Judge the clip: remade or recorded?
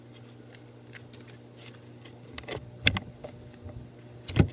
recorded